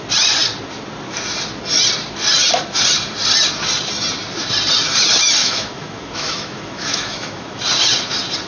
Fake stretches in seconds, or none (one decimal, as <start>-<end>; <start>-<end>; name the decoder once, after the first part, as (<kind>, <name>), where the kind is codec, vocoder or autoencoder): 5.4-7.6 (autoencoder, DAC-VAE)